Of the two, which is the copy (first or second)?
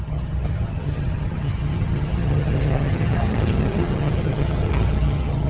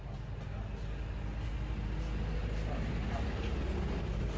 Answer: first